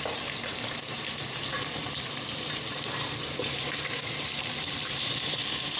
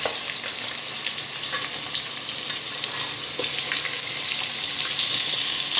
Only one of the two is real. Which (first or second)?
second